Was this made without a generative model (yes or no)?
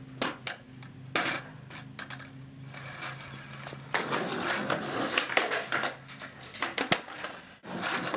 yes